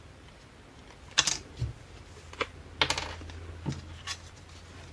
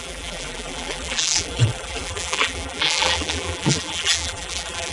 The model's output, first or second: second